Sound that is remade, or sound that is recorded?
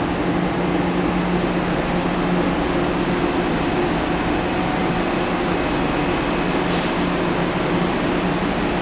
recorded